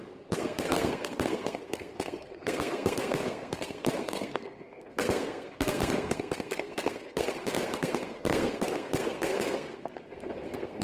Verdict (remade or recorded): remade